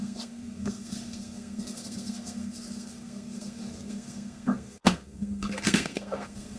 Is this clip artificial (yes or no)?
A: yes